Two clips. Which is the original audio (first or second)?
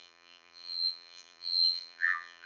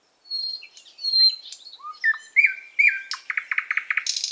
second